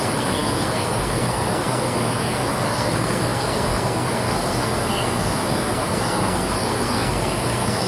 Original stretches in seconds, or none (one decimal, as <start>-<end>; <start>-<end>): none